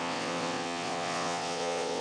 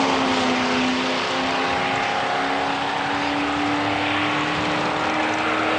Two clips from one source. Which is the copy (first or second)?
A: first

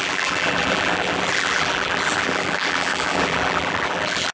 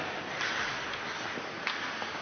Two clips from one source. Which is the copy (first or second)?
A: first